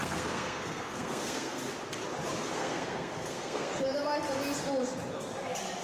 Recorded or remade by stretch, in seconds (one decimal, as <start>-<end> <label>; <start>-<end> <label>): 0.0-1.7 remade; 1.7-2.4 recorded; 2.4-3.7 remade; 3.7-5.8 recorded